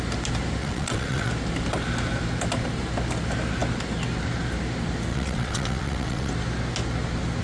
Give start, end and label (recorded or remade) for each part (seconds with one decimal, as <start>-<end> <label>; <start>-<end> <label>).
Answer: 0.0-0.6 recorded; 0.6-1.3 remade; 1.3-5.1 recorded; 5.1-6.3 remade; 6.3-7.4 recorded